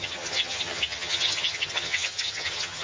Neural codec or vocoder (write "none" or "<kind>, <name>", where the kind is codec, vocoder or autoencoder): vocoder, HiFi-GAN